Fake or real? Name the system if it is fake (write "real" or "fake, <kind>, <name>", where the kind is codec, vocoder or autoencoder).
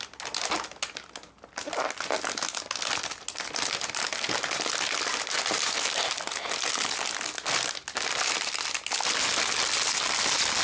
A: real